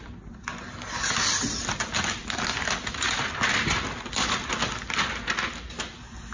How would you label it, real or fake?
real